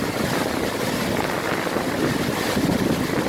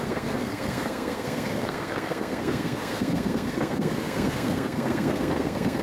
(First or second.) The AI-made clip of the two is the second